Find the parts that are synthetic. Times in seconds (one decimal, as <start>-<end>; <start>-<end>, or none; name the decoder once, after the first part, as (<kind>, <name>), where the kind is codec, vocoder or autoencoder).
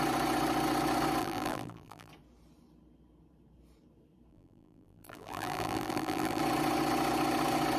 1.2-2.1 (vocoder, BigVGAN v2); 4.3-6.4